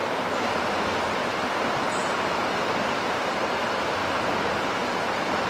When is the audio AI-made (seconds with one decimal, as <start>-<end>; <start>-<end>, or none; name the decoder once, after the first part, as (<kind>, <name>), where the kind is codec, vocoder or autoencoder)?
0.0-0.5 (vocoder, BigVGAN v2); 2.4-2.9; 4.0-5.5